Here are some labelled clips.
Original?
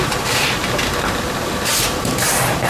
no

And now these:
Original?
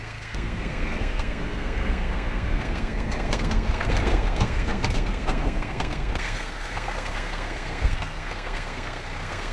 no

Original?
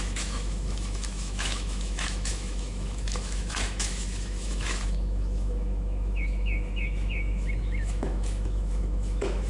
no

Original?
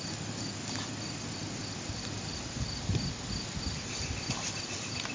yes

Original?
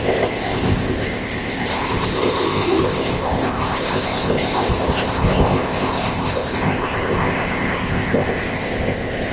no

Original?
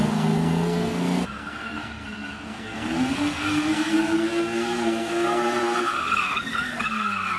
no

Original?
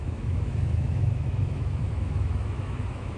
no